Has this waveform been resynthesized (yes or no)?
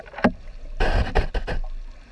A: no